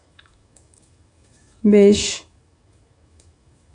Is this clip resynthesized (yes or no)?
yes